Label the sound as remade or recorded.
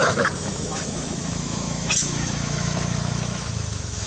remade